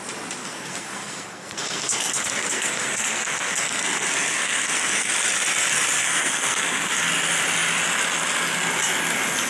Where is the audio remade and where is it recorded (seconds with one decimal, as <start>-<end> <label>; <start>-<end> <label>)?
0.0-0.4 recorded; 0.4-5.1 remade; 5.1-6.0 recorded; 6.0-6.9 remade; 6.9-9.5 recorded